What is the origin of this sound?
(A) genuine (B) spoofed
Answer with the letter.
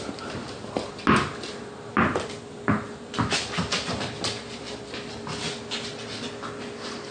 A